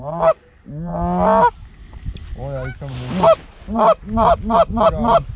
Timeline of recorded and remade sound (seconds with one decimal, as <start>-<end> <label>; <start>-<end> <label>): 0.0-5.4 recorded